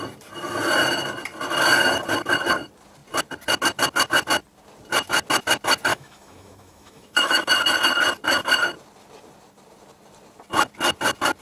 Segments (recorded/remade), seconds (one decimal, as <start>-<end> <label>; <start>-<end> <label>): 0.0-5.9 recorded; 5.9-7.5 remade; 7.5-11.4 recorded